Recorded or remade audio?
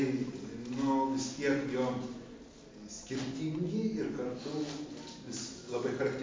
recorded